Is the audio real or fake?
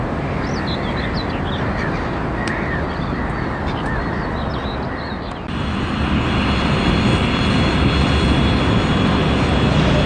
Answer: real